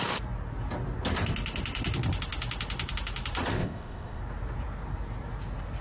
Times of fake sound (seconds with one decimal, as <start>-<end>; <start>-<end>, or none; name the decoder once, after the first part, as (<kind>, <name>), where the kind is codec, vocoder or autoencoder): 3.5-4.2 (codec, ZipCodec)